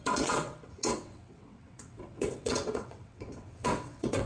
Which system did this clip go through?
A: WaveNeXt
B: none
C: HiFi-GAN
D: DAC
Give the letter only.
A